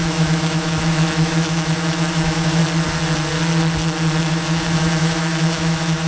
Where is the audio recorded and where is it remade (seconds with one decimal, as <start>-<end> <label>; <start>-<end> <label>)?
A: 0.0-2.6 remade; 2.6-4.2 recorded; 4.2-6.1 remade